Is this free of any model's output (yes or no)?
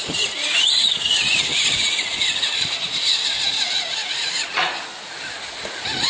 no